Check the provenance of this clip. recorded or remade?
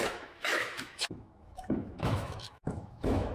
remade